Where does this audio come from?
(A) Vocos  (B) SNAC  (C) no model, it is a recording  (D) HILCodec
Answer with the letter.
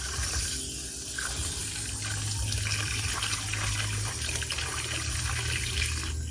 C